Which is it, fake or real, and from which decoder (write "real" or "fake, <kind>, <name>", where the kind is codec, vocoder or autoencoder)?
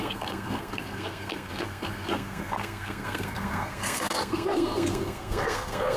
fake, codec, SNAC